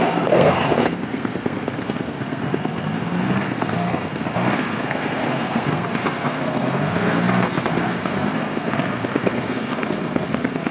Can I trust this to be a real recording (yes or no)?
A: no